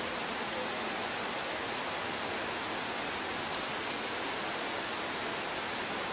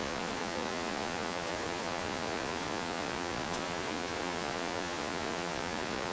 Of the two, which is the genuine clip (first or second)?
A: first